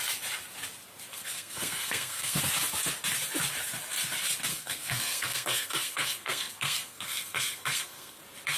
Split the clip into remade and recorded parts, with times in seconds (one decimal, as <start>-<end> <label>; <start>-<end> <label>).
0.0-1.1 recorded; 1.1-2.4 remade; 2.4-4.5 recorded; 4.5-8.2 remade; 8.2-8.6 recorded